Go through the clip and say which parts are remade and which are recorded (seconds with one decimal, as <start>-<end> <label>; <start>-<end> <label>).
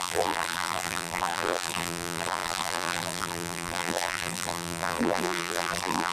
0.0-6.1 remade